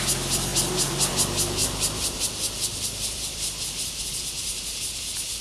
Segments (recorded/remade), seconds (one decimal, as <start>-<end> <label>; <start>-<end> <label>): 0.0-1.6 recorded; 1.6-2.2 remade; 2.2-2.7 recorded; 2.7-3.6 remade; 3.6-5.4 recorded